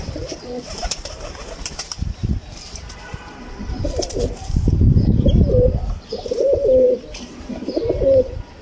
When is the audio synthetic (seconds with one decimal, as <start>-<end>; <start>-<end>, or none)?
0.0-8.6